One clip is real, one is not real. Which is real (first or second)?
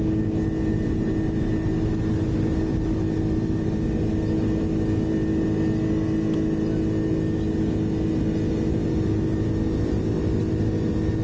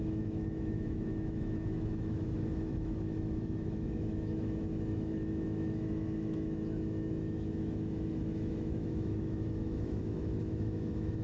first